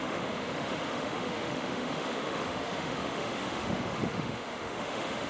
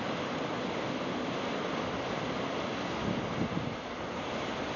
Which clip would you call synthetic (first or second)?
first